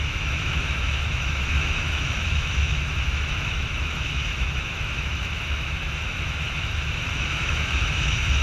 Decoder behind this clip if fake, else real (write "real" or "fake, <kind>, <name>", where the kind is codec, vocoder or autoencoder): fake, autoencoder, DAC-VAE